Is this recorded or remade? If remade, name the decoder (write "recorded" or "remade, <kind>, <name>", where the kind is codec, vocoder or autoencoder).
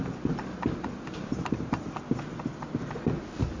recorded